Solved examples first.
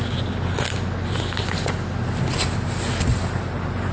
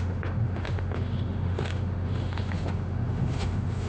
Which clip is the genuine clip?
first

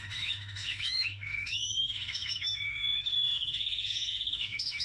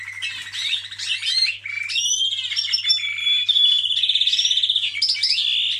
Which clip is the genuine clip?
second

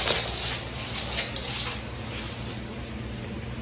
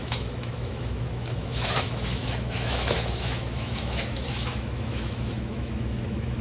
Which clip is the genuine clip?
first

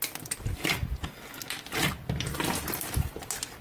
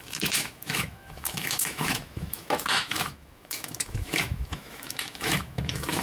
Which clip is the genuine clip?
first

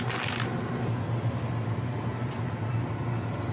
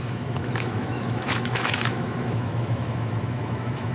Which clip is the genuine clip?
first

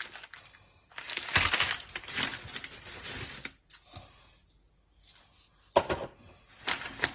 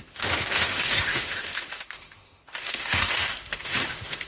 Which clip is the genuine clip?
first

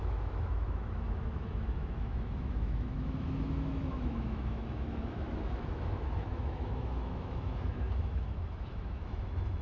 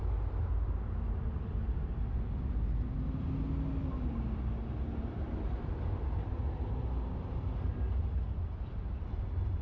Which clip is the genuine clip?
second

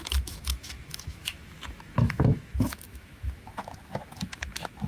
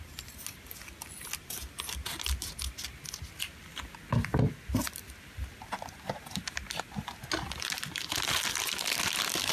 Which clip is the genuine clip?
second